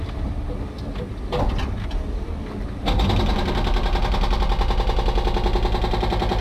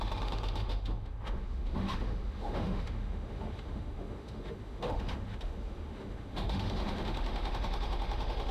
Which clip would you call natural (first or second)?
first